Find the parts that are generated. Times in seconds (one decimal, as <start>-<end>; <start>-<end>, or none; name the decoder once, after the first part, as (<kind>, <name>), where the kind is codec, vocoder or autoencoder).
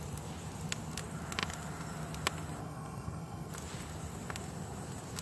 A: 2.6-3.5 (codec, SNAC)